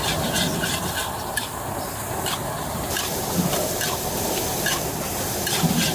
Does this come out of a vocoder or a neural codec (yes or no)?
no